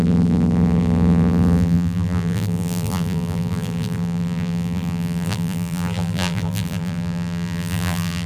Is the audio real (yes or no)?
no